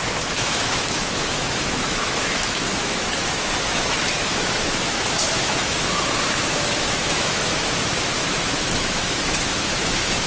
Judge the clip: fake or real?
fake